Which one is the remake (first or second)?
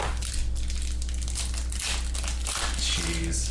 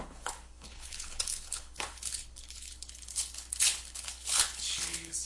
second